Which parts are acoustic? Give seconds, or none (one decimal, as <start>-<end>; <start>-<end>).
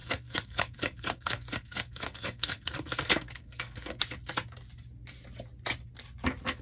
4.0-6.6